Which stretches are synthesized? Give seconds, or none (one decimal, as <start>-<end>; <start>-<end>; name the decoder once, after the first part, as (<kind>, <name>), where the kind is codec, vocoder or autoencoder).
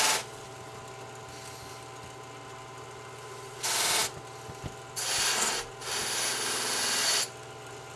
none